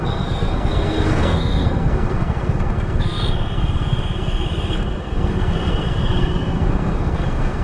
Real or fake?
fake